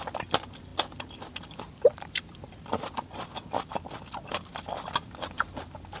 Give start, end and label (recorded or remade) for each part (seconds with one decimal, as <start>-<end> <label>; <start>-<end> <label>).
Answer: 0.0-6.0 recorded